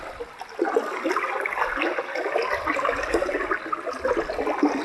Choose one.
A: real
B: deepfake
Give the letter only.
A